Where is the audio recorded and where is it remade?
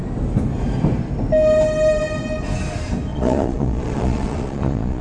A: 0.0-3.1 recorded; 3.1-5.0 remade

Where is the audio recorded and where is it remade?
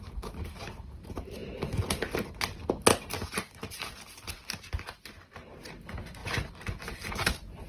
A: 0.0-7.7 recorded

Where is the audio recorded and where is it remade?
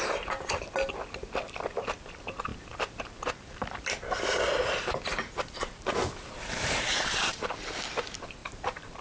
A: 0.0-5.1 recorded; 5.1-7.8 remade; 7.8-8.4 recorded; 8.4-9.0 remade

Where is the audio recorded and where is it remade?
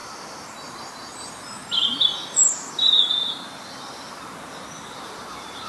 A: 0.0-5.7 recorded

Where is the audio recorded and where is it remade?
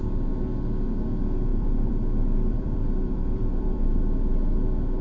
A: 0.0-1.5 recorded; 1.5-4.3 remade; 4.3-5.0 recorded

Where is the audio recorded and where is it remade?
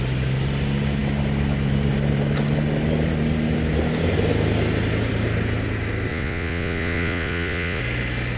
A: 0.0-6.1 recorded; 6.1-7.8 remade; 7.8-8.4 recorded